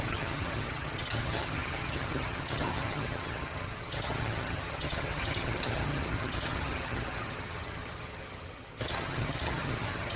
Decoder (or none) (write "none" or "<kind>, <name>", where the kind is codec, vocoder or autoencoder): vocoder, HiFi-GAN